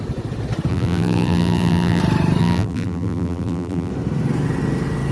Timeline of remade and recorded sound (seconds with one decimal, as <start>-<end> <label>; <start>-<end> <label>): 0.0-0.7 recorded; 0.7-2.0 remade; 2.0-2.4 recorded; 2.4-3.9 remade; 3.9-5.1 recorded